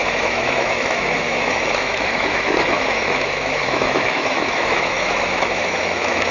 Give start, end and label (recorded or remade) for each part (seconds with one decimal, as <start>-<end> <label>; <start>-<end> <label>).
0.0-6.3 remade

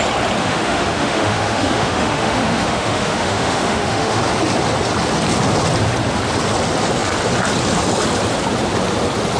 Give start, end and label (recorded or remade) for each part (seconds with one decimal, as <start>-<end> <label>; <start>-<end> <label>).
0.0-0.4 recorded; 0.4-4.2 remade; 4.2-9.4 recorded

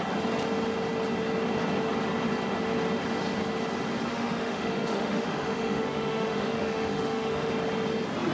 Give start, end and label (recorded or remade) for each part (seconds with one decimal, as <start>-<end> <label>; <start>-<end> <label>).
0.0-4.1 recorded; 4.1-7.5 remade; 7.5-8.3 recorded

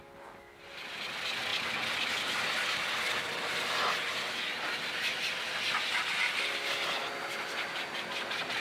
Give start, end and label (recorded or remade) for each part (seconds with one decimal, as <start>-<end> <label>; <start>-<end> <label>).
0.0-8.6 recorded

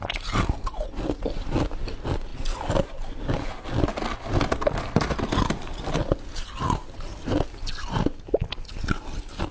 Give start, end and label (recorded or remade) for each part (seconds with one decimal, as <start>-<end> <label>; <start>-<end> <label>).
0.0-9.5 recorded

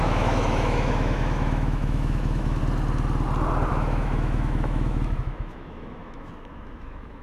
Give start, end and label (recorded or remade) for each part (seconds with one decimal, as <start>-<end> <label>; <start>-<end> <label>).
0.0-2.6 remade; 2.6-3.7 recorded; 3.7-7.2 remade

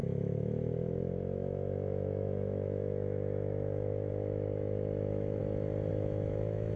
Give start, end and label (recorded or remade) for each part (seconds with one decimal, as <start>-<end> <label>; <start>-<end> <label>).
0.0-5.4 remade; 5.4-5.9 recorded; 5.9-6.8 remade